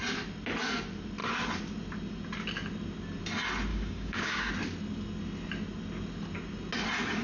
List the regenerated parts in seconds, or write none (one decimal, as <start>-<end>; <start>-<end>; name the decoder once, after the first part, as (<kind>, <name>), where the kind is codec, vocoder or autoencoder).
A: 3.7-4.5 (codec, DAC)